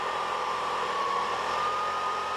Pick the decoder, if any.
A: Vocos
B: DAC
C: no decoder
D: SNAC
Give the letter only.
C